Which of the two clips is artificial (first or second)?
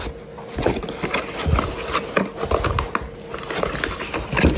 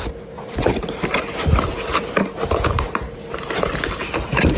second